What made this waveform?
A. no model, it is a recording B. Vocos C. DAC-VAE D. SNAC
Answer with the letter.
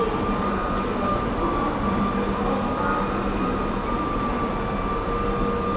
A